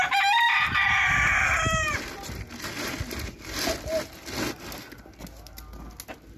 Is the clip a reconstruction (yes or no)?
no